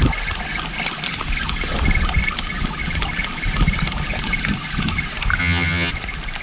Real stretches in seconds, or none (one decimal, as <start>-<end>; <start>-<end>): 0.0-5.4; 5.9-6.4